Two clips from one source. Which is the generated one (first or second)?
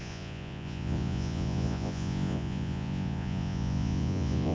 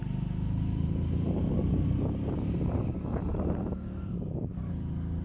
first